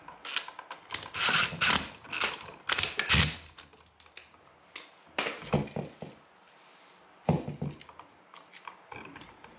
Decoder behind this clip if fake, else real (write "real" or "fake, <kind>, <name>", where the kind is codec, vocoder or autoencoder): real